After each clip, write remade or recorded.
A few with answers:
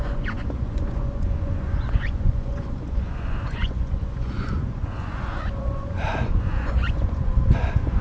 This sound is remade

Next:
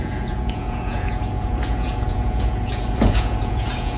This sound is remade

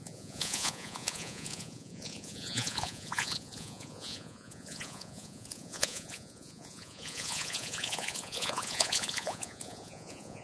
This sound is remade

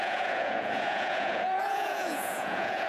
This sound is remade